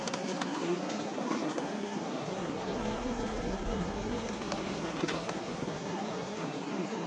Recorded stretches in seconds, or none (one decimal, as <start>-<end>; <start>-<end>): none